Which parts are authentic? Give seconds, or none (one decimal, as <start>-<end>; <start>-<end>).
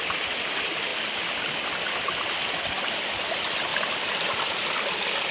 0.0-5.3